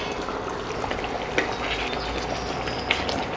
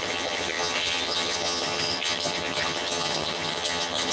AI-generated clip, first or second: second